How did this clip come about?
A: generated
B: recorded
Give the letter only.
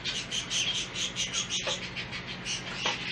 B